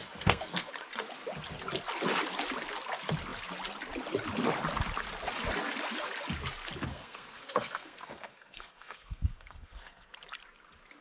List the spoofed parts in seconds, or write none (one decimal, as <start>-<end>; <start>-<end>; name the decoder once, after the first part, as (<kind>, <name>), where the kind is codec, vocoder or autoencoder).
0.0-0.7 (codec, SNAC); 6.9-10.1